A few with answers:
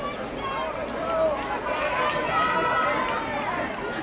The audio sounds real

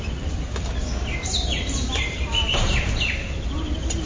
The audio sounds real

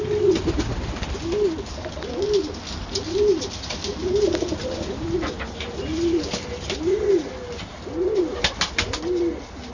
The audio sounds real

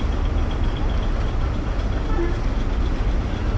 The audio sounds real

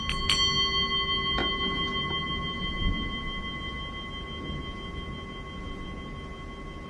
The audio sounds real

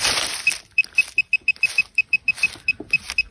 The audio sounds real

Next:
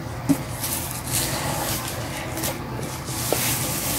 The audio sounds real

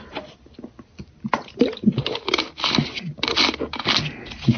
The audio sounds real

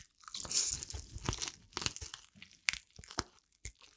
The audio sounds real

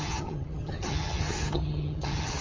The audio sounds fake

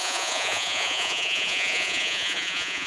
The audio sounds fake